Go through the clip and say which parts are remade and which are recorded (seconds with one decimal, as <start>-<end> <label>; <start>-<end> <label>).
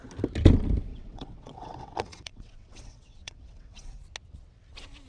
0.0-0.9 recorded; 0.9-4.0 remade; 4.0-5.1 recorded